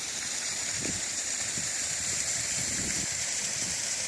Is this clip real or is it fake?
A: fake